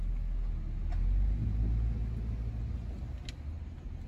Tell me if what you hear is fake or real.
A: real